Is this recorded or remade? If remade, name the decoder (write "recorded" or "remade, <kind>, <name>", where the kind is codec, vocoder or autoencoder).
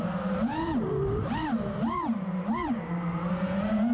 remade, vocoder, BigVGAN v2